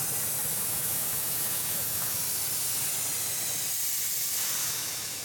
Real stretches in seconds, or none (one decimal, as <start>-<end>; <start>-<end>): 0.0-0.5; 2.2-4.6